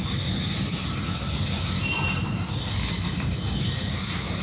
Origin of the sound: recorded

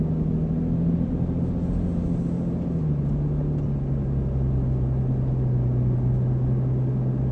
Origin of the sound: recorded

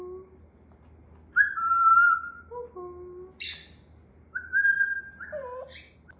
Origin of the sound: recorded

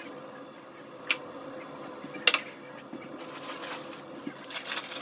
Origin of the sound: recorded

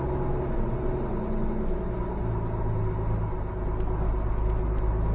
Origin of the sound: recorded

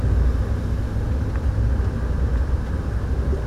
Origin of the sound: recorded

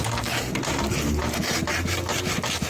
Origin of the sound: recorded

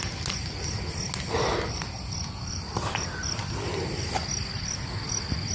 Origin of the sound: recorded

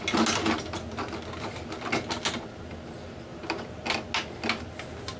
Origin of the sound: recorded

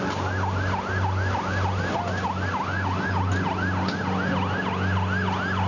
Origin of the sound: recorded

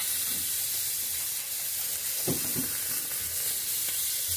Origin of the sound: recorded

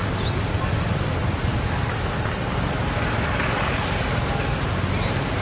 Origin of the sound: remade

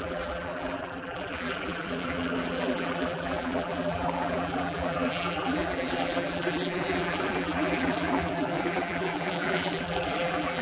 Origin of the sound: remade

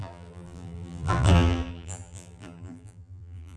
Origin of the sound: remade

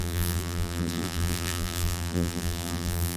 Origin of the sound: remade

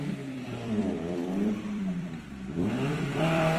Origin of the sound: remade